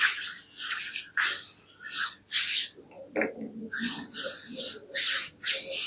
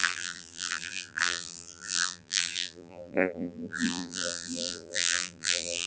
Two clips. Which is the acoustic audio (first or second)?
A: first